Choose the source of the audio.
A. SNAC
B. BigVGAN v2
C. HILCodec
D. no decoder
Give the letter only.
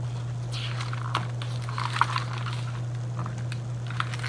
D